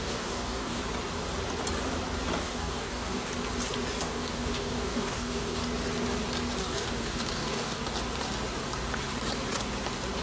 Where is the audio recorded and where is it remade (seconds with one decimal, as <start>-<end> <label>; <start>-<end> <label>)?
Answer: 0.0-0.8 remade; 0.8-2.4 recorded; 2.4-3.3 remade; 3.3-4.0 recorded; 4.0-5.6 remade; 5.6-6.6 recorded; 6.6-7.8 remade; 7.8-10.2 recorded